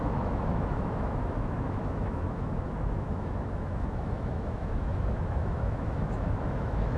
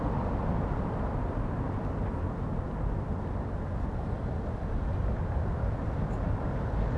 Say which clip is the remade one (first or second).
first